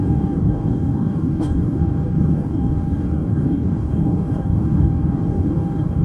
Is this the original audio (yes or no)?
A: no